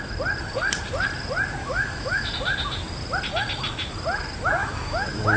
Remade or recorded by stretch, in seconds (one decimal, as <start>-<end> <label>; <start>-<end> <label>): 0.0-1.6 recorded; 1.6-2.3 remade; 2.3-4.6 recorded; 4.6-5.4 remade